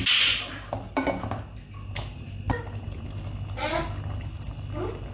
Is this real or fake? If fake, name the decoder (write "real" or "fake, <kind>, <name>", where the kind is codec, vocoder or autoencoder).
real